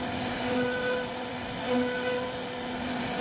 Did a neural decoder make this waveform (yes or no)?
no